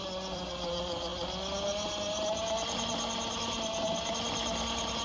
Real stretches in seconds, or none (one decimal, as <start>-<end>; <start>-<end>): 0.0-5.0